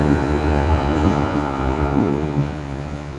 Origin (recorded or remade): remade